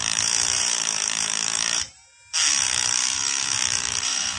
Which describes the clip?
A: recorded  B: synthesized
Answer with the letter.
B